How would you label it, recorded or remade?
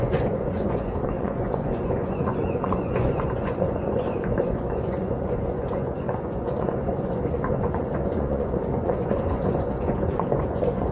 remade